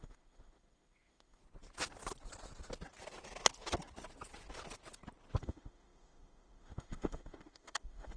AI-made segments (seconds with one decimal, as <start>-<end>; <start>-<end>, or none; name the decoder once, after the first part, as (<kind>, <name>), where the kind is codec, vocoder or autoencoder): 0.0-1.4 (autoencoder, DAC-VAE); 5.4-8.2